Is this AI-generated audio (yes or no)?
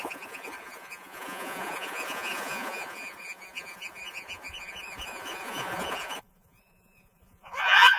yes